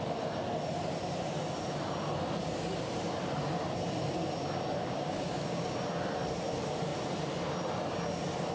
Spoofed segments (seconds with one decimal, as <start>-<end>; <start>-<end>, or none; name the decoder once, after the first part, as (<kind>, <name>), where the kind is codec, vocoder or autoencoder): 4.8-5.7 (codec, DAC)